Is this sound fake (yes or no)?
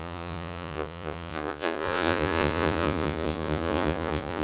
yes